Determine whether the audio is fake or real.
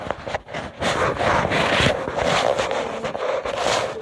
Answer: real